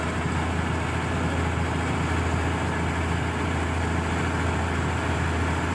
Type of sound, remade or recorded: recorded